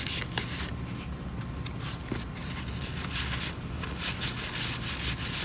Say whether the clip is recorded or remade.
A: recorded